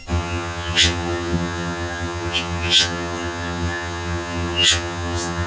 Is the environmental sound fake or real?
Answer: fake